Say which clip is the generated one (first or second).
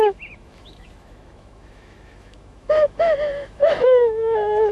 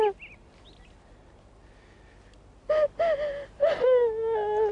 first